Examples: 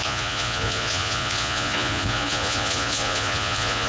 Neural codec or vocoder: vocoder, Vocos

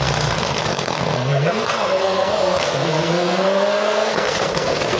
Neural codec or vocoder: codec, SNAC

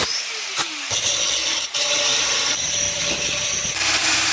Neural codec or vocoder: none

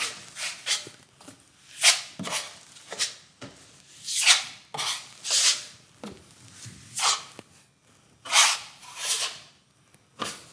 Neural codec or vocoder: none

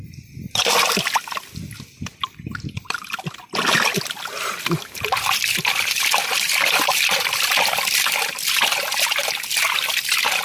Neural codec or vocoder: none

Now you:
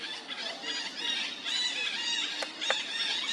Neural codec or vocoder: none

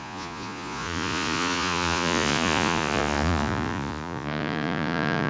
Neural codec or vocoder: vocoder, Vocos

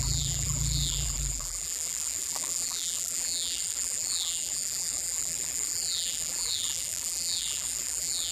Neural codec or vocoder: vocoder, BigVGAN v2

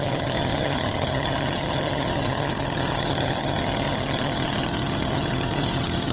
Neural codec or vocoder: vocoder, HiFi-GAN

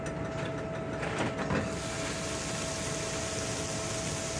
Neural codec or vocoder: none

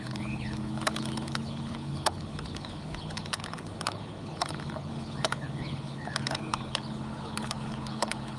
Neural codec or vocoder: codec, HILCodec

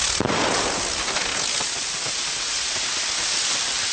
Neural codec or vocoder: none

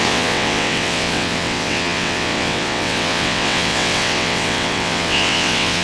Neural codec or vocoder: vocoder, WaveNeXt